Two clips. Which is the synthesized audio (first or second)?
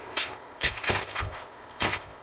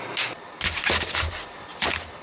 first